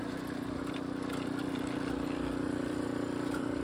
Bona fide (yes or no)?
no